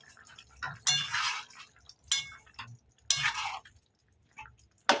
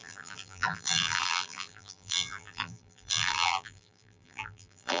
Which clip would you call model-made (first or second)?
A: second